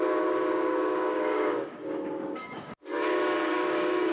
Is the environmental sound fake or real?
fake